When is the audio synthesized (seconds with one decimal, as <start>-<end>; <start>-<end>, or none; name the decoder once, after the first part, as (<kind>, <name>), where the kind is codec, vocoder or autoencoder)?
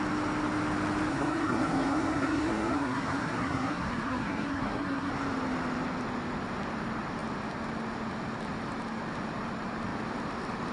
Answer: 1.1-5.1 (codec, SNAC)